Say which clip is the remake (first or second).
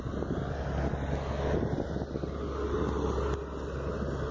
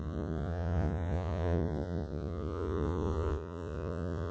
second